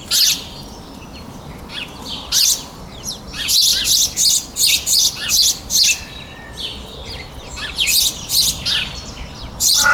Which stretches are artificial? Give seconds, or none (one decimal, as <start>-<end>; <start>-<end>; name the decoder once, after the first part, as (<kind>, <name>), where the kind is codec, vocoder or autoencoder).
none